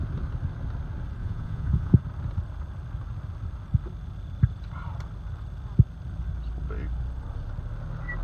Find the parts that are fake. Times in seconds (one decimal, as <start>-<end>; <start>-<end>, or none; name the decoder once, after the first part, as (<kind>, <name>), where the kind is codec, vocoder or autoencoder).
1.2-2.0 (vocoder, Vocos)